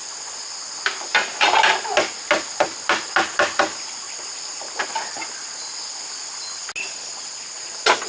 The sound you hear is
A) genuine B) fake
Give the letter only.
A